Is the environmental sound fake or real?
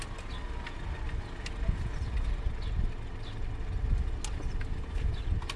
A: real